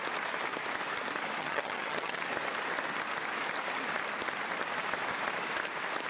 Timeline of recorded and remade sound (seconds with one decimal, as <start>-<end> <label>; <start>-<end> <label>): 0.0-1.4 recorded; 1.4-2.2 remade; 2.2-6.1 recorded